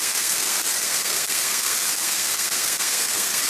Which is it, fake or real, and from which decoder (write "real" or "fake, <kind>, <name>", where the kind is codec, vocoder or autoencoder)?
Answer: fake, codec, SNAC